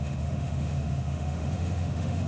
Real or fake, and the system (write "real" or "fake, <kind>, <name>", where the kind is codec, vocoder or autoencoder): fake, autoencoder, DAC-VAE